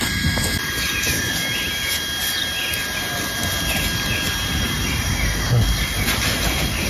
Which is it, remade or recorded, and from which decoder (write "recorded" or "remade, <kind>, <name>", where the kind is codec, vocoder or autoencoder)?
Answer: recorded